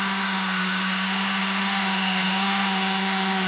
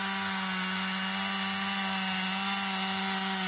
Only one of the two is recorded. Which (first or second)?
second